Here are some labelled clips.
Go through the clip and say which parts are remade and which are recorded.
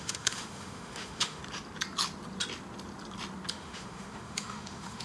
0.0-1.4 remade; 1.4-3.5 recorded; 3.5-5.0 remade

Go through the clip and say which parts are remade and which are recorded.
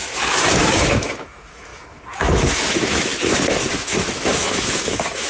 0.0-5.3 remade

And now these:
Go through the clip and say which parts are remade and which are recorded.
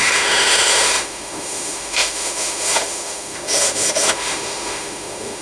0.0-5.4 remade